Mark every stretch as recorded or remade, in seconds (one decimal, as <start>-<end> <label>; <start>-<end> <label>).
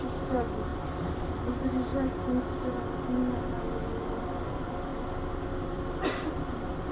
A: 0.0-1.9 remade; 1.9-3.4 recorded; 3.4-4.9 remade; 4.9-5.5 recorded; 5.5-6.9 remade